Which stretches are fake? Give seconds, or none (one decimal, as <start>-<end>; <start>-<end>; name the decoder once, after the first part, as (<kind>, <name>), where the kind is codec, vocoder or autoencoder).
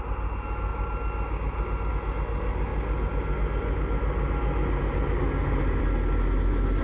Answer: none